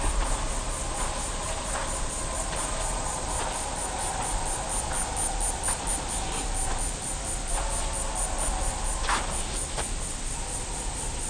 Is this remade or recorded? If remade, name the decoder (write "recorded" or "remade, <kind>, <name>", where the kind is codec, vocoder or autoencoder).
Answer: recorded